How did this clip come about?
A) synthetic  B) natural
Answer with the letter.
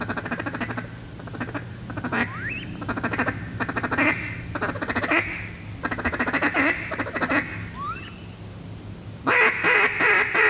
B